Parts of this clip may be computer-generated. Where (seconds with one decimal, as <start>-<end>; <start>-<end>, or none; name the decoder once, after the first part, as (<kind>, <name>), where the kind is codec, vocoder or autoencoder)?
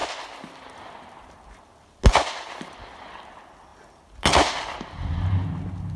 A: none